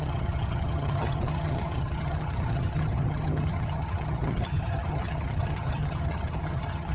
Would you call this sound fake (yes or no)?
yes